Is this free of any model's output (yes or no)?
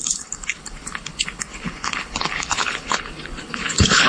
no